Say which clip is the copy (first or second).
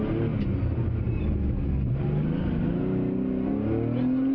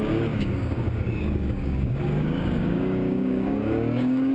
second